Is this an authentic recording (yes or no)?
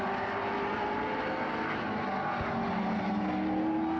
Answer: yes